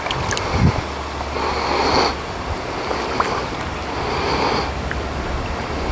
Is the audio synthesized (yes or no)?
no